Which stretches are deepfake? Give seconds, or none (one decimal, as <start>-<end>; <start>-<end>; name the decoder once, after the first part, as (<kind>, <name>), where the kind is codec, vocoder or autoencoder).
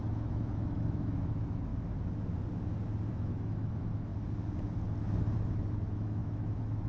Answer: 0.0-1.7 (autoencoder, DAC-VAE); 3.1-4.1; 5.2-6.9